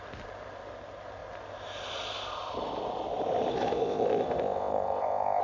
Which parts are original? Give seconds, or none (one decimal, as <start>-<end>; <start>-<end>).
0.0-3.5